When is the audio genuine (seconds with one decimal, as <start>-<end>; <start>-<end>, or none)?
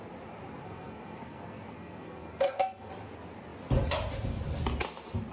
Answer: 0.0-0.6; 2.9-5.3